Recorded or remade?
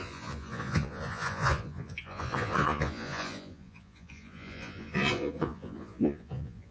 remade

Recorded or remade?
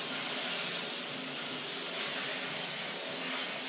recorded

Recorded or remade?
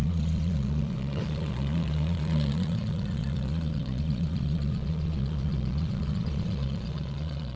remade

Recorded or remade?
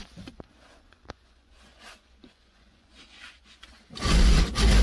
remade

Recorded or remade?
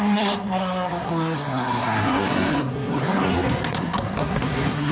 remade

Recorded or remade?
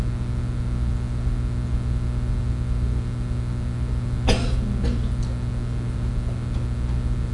recorded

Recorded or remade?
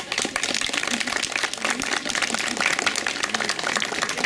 recorded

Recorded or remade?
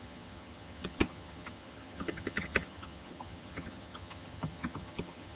remade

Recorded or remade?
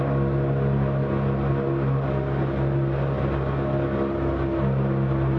recorded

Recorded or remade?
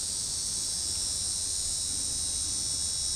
recorded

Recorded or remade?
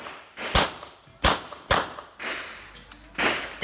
recorded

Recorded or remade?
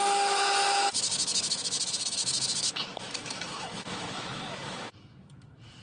remade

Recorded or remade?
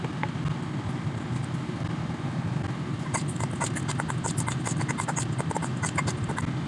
recorded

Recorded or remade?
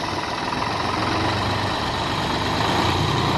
recorded